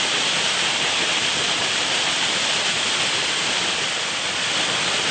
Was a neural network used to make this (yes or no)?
no